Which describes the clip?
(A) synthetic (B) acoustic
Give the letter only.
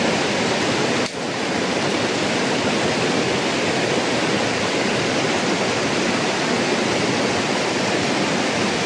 B